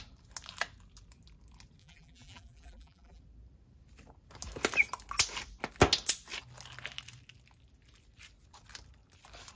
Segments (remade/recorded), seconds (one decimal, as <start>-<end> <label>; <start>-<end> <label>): 0.0-1.8 recorded; 1.8-3.2 remade; 3.2-9.6 recorded